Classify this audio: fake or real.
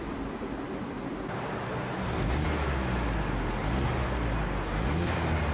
real